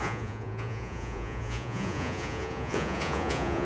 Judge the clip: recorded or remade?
remade